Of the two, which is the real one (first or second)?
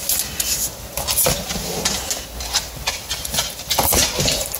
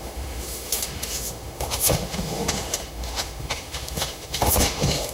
first